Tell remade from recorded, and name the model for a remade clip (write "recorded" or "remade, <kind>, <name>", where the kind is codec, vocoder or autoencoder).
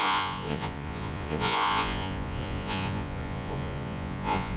remade, vocoder, Vocos